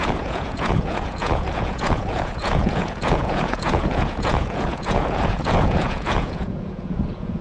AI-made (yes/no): yes